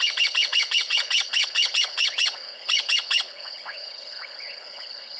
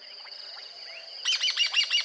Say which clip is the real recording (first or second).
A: second